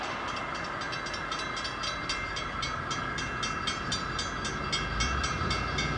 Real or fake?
real